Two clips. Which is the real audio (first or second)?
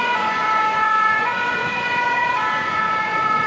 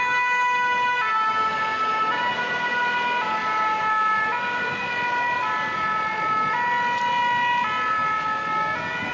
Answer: second